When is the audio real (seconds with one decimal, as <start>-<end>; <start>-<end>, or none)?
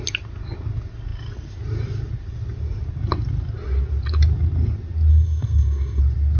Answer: 0.0-5.1; 6.0-6.4